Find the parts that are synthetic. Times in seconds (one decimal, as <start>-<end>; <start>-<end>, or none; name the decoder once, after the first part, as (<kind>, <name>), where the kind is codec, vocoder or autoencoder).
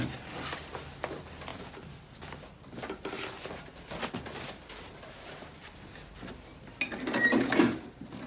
none